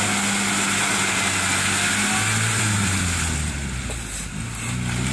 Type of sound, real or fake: real